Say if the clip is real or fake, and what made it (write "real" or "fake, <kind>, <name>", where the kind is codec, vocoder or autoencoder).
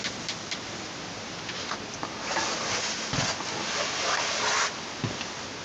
real